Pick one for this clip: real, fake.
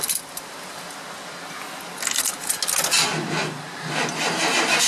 real